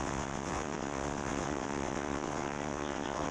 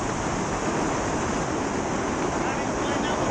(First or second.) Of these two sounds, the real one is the second